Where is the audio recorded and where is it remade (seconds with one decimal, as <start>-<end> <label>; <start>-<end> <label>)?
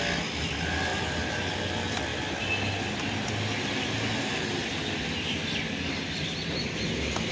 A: 0.0-0.9 recorded; 0.9-1.5 remade; 1.5-7.3 recorded